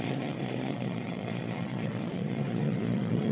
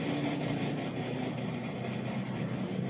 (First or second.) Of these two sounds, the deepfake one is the first